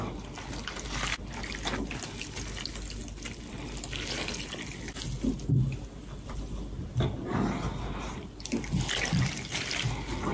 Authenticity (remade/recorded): recorded